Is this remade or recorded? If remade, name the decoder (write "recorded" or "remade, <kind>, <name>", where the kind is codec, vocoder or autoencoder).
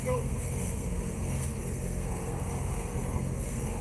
remade, codec, SNAC